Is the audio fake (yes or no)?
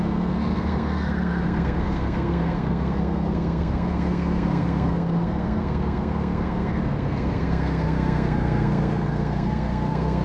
yes